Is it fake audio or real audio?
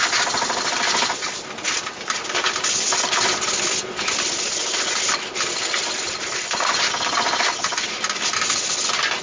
real